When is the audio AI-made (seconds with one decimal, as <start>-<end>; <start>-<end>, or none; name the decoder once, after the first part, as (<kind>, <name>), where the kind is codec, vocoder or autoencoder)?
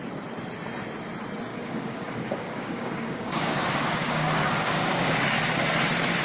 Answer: 1.5-5.2 (codec, DAC)